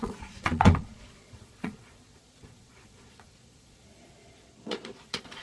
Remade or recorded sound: remade